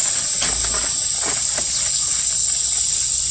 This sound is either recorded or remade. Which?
recorded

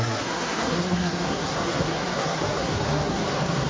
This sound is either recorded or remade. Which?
remade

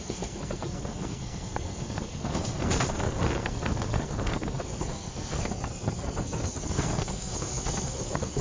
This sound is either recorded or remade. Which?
remade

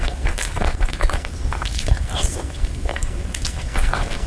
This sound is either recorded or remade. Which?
remade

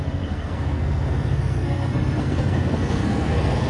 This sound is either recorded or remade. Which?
remade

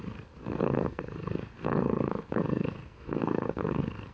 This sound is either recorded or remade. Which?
remade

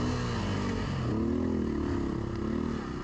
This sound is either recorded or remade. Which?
recorded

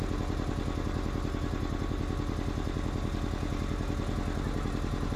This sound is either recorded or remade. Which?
recorded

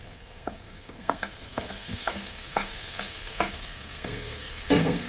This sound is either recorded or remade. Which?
remade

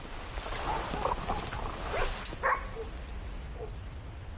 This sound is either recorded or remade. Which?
recorded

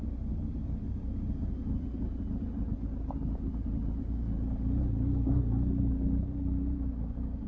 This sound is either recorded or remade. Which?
recorded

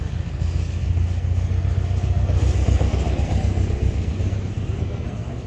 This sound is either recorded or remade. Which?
remade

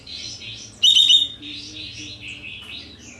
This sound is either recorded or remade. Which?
recorded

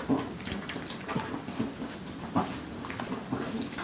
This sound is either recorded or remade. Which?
recorded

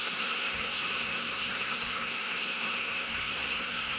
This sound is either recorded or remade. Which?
remade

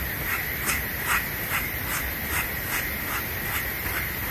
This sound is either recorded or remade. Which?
recorded